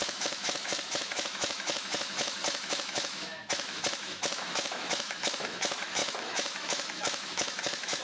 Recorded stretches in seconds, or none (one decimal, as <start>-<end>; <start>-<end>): none